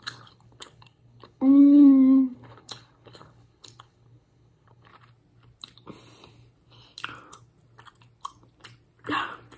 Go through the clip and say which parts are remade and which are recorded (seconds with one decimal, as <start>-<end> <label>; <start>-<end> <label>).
0.0-4.9 remade; 4.9-9.6 recorded